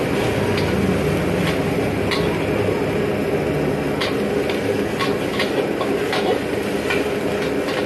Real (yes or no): yes